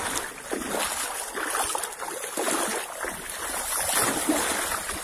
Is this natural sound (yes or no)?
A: yes